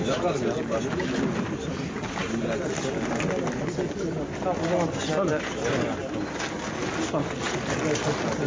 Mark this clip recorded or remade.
recorded